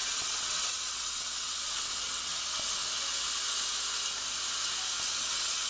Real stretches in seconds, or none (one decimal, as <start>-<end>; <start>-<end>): 2.8-5.0